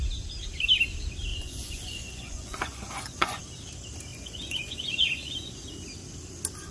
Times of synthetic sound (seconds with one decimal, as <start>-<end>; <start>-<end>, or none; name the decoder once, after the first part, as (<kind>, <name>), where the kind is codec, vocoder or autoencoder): 1.3-3.4 (vocoder, Vocos); 4.1-5.5